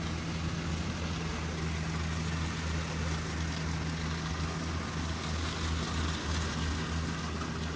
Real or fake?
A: real